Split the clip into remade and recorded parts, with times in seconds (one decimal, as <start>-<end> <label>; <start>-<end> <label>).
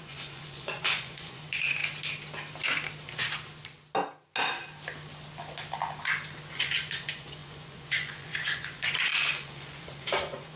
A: 0.0-1.8 remade; 1.8-6.5 recorded; 6.5-10.6 remade